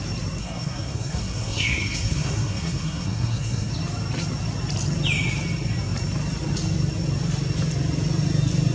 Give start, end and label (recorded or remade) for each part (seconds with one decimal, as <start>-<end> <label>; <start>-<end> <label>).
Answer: 0.0-0.4 recorded; 0.4-3.7 remade; 3.7-8.7 recorded